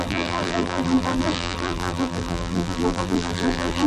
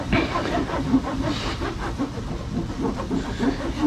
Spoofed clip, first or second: first